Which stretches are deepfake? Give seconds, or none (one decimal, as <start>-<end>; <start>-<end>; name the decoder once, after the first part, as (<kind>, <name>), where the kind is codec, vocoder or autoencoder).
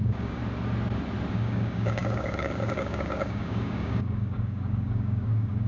0.0-0.4 (codec, DAC); 1.3-5.7